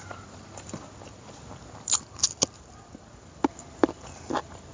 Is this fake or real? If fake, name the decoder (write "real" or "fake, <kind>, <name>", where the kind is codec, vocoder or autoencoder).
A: real